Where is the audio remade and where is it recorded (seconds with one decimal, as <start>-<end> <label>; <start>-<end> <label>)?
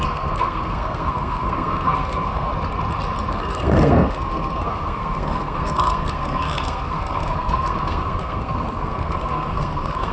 0.0-2.5 remade; 2.5-3.3 recorded; 3.3-10.1 remade